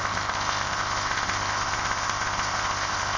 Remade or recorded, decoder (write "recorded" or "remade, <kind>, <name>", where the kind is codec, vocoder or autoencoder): remade, codec, ZipCodec